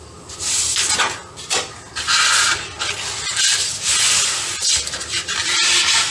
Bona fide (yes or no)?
yes